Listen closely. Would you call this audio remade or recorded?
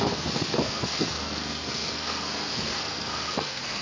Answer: remade